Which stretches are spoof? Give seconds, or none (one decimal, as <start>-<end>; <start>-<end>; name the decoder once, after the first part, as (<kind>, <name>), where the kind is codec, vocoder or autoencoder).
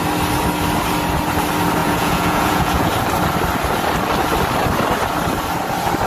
1.8-2.9 (vocoder, Vocos)